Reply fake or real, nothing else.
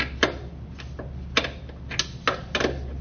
real